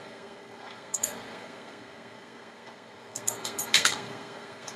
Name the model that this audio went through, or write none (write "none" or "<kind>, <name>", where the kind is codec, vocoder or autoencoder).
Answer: codec, SNAC